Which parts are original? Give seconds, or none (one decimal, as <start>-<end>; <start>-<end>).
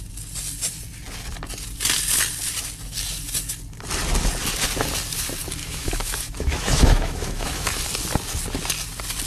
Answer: 0.0-5.6; 7.8-9.3